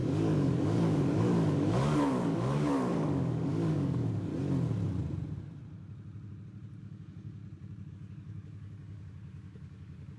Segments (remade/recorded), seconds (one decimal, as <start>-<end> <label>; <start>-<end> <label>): 0.0-4.3 remade; 4.3-6.8 recorded; 6.8-7.4 remade; 7.4-7.9 recorded; 7.9-10.2 remade